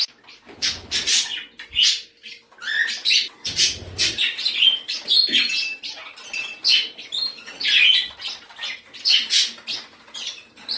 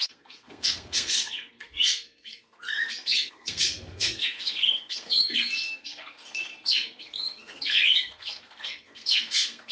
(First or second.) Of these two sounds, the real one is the first